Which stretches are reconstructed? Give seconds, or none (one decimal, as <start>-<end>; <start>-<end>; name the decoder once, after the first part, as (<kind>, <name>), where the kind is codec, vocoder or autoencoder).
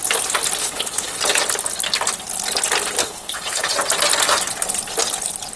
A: 0.6-1.2 (codec, HILCodec); 3.0-3.7